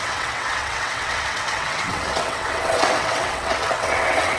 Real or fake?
fake